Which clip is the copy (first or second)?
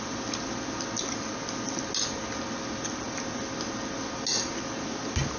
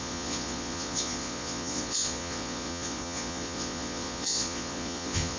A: second